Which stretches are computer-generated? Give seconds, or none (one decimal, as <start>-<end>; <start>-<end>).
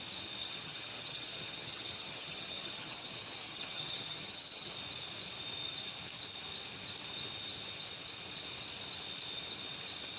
0.4-4.7